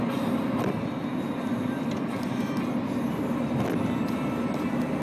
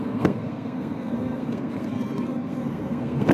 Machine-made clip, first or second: second